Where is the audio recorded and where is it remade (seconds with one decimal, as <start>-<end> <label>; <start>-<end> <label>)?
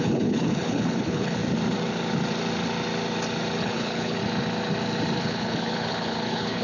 0.0-1.4 remade; 1.4-3.6 recorded; 3.6-4.2 remade; 4.2-5.2 recorded; 5.2-6.6 remade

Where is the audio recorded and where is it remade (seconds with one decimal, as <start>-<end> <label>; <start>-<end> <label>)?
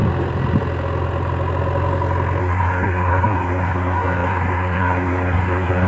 0.0-2.4 recorded; 2.4-5.9 remade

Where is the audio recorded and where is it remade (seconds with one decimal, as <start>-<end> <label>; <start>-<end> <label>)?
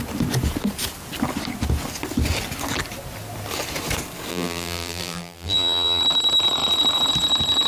0.0-4.3 recorded; 4.3-6.0 remade; 6.0-7.7 recorded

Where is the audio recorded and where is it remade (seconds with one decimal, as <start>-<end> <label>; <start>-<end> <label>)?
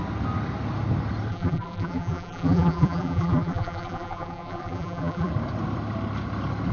0.0-1.3 recorded; 1.3-5.3 remade; 5.3-6.7 recorded